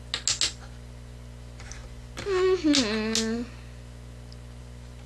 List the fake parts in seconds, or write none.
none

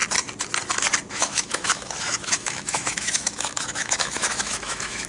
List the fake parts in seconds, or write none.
1.1-5.1 (autoencoder, DAC-VAE)

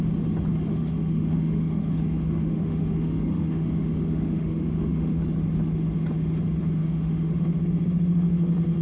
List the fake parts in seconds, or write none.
0.7-5.2 (autoencoder, DAC-VAE); 6.8-7.5

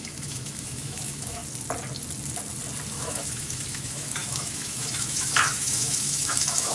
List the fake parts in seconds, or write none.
0.0-1.4 (autoencoder, DAC-VAE); 2.9-6.7

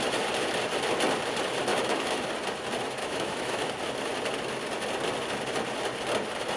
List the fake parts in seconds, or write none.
1.7-2.3 (autoencoder, DAC-VAE); 3.0-3.7

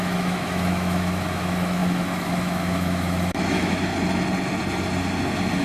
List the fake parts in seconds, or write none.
0.0-3.9 (autoencoder, DAC-VAE)

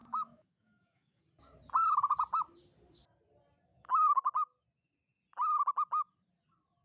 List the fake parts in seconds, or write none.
0.0-1.2 (autoencoder, DAC-VAE); 3.7-4.3